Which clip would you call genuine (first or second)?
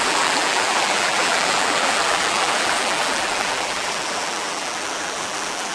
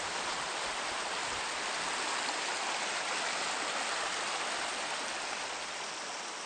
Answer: second